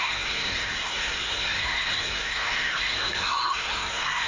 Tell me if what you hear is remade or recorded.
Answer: remade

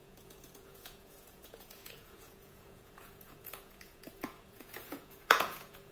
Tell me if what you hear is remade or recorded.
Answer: remade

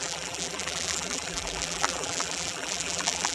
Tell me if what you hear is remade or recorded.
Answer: remade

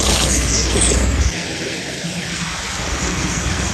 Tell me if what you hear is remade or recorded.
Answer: remade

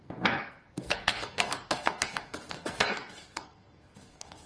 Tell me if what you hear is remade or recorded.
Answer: remade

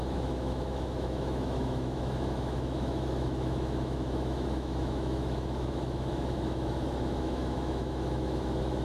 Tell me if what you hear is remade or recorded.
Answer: remade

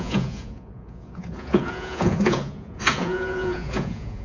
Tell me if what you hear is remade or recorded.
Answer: remade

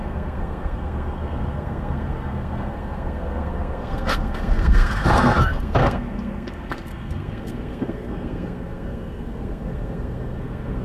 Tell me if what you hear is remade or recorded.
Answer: remade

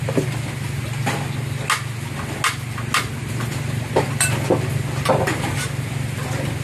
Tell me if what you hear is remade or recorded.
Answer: recorded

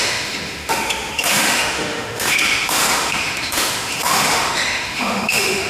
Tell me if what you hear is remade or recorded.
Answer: remade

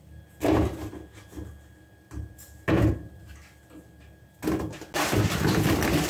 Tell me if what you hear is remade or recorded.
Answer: recorded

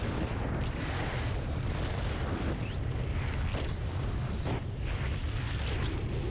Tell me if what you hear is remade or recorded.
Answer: recorded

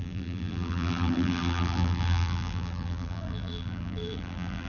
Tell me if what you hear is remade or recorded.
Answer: remade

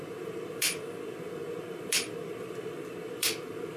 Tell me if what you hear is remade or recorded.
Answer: remade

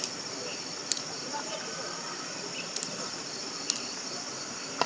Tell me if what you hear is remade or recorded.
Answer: remade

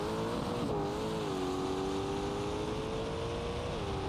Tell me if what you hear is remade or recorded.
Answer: recorded